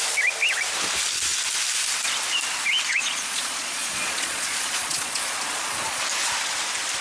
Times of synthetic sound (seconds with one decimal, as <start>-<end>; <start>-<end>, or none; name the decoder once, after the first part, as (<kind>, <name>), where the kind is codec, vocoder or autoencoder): 2.9-6.0 (vocoder, Vocos)